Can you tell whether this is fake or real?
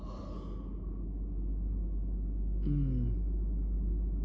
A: real